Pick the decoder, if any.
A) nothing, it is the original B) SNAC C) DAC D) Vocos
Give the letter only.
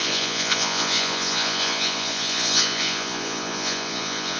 D